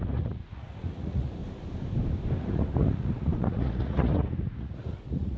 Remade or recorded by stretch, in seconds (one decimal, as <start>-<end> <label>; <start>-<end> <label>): 0.0-1.4 remade; 1.4-2.4 recorded; 2.4-5.4 remade